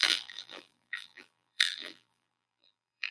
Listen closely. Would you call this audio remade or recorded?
remade